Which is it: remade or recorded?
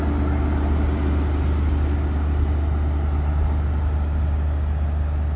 recorded